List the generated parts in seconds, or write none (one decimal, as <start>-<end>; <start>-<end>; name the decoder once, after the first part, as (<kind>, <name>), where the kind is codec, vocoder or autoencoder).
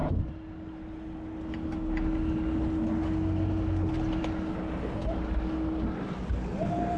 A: none